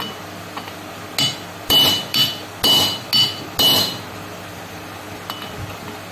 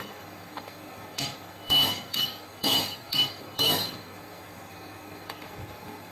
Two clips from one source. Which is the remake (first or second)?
second